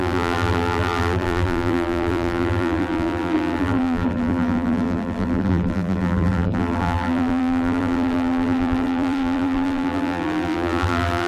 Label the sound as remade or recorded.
remade